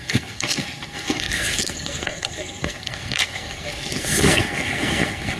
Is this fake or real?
fake